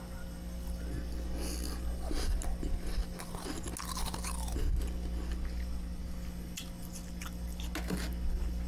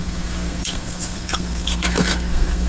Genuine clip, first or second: first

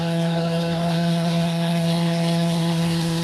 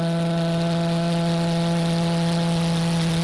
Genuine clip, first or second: second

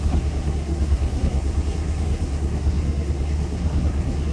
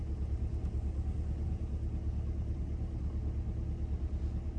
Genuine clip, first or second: second